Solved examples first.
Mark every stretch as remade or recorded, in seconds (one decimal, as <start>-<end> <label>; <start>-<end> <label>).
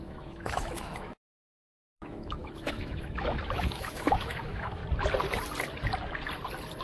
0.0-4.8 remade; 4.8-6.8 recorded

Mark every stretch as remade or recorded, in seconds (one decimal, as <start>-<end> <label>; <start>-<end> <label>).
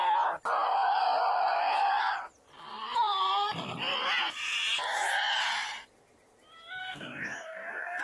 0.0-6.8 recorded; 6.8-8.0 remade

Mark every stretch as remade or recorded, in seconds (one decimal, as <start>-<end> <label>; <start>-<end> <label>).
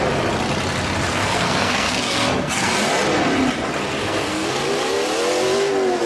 0.0-1.1 recorded; 1.1-2.7 remade; 2.7-4.0 recorded; 4.0-4.6 remade; 4.6-6.1 recorded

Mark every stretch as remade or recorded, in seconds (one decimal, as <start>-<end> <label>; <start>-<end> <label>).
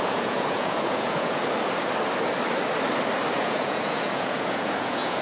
0.0-1.4 remade; 1.4-3.4 recorded; 3.4-5.2 remade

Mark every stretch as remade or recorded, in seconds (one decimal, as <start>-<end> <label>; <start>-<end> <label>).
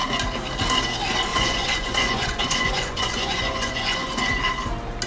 0.0-1.3 recorded; 1.3-4.4 remade; 4.4-5.1 recorded